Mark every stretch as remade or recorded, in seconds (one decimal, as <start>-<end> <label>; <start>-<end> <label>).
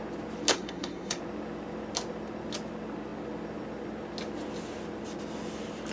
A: 0.0-0.5 recorded; 0.5-1.2 remade; 1.2-5.9 recorded